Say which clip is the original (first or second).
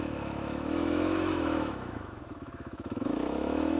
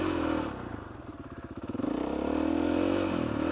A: second